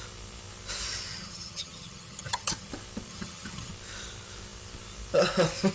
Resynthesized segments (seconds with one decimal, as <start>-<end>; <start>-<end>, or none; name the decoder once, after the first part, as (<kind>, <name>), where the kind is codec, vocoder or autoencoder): 1.1-2.7 (vocoder, HiFi-GAN); 3.1-3.7

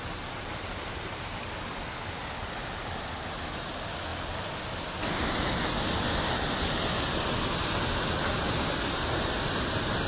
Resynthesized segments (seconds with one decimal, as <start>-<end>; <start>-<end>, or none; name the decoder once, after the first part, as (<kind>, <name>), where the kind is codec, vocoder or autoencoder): none